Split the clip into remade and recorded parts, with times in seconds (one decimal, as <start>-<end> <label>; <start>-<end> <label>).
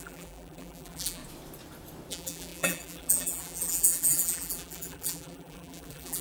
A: 0.0-1.2 remade; 1.2-2.1 recorded; 2.1-6.2 remade